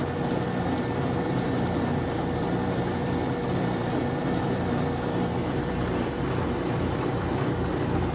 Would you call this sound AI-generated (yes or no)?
yes